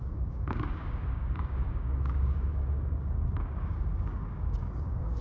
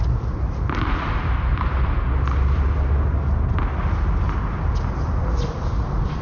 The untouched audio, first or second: second